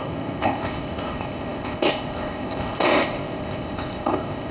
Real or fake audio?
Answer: fake